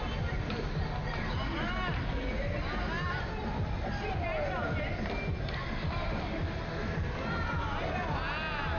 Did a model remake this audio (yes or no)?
no